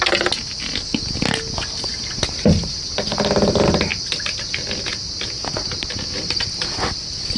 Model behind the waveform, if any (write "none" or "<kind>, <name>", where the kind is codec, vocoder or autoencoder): none